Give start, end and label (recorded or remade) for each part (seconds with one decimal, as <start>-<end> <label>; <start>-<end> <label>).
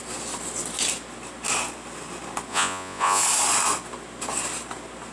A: 0.0-2.5 recorded; 2.5-3.2 remade; 3.2-5.1 recorded